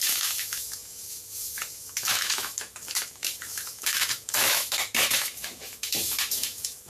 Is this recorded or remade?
remade